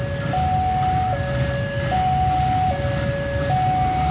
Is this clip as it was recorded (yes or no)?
yes